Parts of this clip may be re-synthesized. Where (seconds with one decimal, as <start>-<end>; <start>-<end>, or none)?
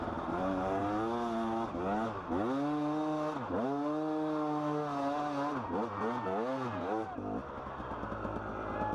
none